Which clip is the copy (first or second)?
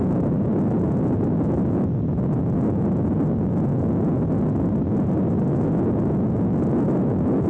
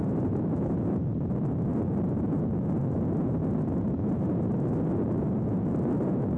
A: second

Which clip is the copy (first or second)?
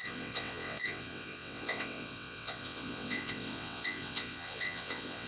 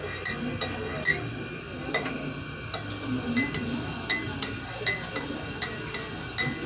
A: first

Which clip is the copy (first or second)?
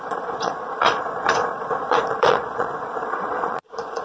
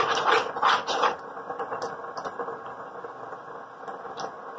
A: first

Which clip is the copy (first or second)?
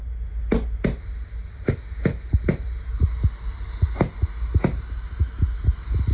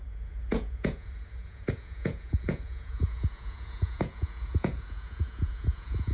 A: second